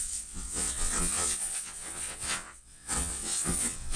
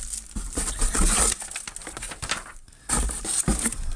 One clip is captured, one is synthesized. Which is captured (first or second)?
second